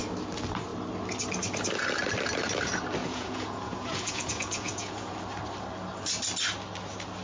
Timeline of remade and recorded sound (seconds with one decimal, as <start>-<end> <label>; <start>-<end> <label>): 0.0-3.0 recorded; 3.0-5.1 remade; 5.1-7.2 recorded